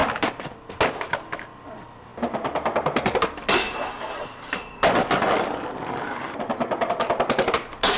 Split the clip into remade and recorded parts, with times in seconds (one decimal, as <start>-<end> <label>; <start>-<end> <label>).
0.0-8.0 recorded